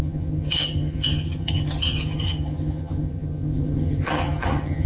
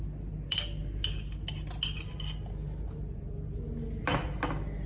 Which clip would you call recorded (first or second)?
second